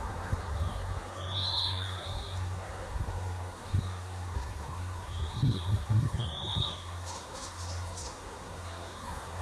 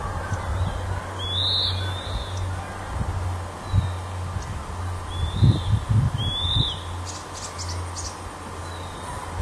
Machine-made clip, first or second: first